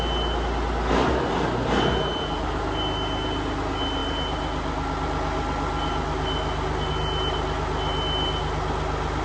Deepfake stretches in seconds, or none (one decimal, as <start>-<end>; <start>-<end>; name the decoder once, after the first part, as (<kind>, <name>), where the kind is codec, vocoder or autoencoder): none